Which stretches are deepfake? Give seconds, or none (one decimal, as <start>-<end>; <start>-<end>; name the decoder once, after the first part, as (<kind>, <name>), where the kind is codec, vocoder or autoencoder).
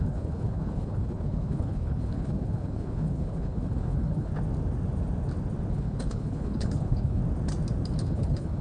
0.0-4.3 (codec, HILCodec); 5.7-7.2; 8.0-8.6